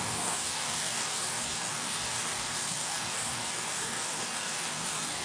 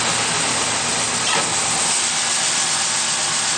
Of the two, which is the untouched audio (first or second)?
second